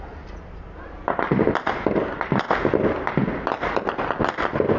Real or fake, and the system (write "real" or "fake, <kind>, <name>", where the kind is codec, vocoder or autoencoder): real